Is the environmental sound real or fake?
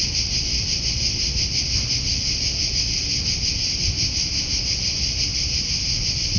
real